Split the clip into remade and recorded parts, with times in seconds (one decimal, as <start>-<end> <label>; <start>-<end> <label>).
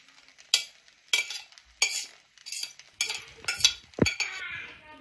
0.0-5.0 recorded